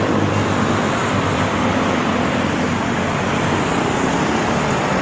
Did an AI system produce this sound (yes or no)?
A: yes